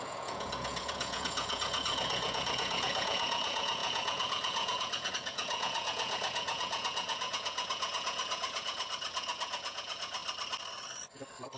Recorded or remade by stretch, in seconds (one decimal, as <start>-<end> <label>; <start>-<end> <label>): 0.0-10.2 remade; 10.2-11.6 recorded